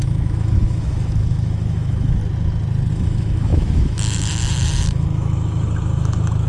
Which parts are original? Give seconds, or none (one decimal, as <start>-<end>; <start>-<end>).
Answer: 2.2-2.9